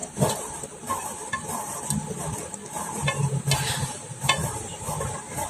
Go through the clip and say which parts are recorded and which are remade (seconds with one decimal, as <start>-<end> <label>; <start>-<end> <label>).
0.0-0.9 remade; 0.9-3.0 recorded; 3.0-4.2 remade; 4.2-5.5 recorded

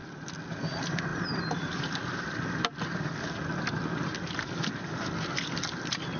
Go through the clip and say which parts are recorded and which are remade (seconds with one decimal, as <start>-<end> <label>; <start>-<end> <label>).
0.0-6.2 recorded

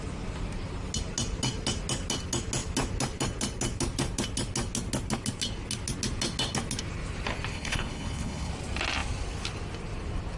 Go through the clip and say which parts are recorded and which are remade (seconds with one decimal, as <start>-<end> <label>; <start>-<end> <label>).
0.0-7.5 recorded; 7.5-8.5 remade; 8.5-10.4 recorded